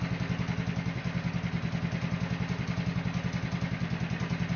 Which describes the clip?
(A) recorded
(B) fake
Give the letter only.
A